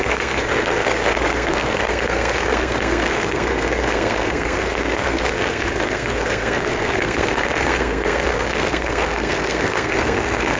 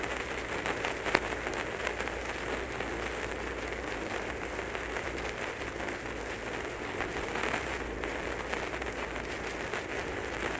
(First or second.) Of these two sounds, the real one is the second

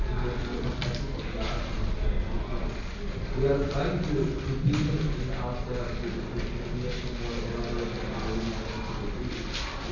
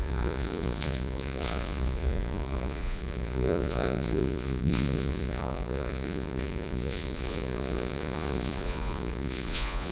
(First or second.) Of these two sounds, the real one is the first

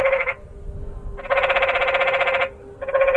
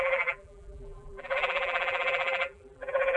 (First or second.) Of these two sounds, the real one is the first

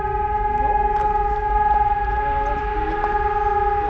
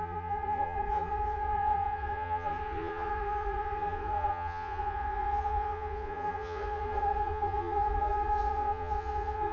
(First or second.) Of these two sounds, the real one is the first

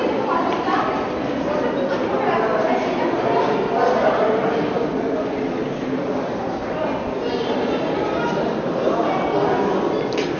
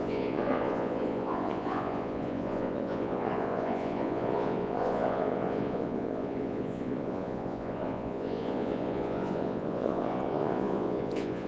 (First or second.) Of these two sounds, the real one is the first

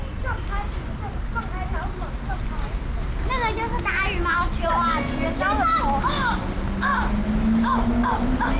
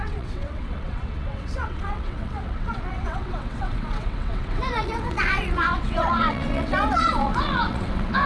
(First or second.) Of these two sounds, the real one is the first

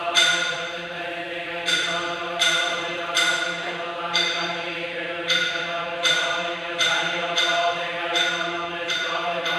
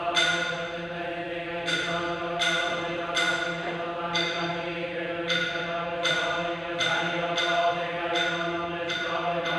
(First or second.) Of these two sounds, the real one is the second